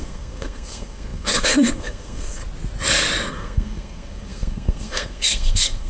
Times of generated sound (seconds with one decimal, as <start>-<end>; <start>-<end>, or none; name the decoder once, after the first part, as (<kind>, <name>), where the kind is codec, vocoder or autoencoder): 0.0-2.4 (codec, SNAC); 3.3-5.9